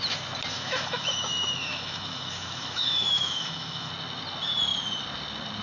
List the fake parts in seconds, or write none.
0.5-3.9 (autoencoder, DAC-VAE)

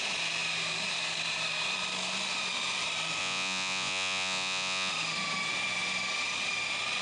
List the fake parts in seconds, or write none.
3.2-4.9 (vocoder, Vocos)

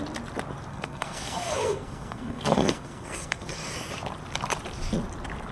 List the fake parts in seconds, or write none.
0.7-3.9 (codec, SNAC)